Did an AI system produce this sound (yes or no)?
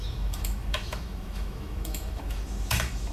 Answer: yes